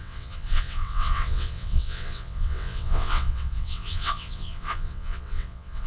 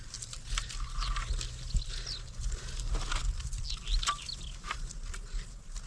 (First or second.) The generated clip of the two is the first